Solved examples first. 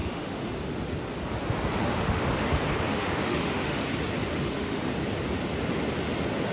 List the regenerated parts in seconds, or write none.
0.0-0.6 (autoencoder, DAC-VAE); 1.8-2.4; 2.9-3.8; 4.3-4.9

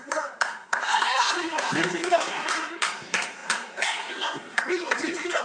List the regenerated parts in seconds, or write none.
0.0-5.4 (codec, SNAC)

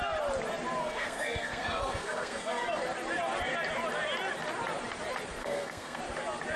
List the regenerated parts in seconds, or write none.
0.8-2.8 (codec, SNAC); 5.4-6.0

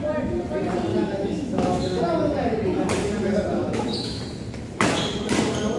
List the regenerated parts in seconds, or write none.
0.9-2.0 (autoencoder, DAC-VAE); 3.5-4.2

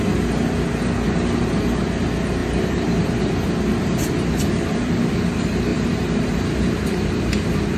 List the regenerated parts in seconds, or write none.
2.4-3.0 (vocoder, BigVGAN v2); 3.7-5.0; 5.7-7.1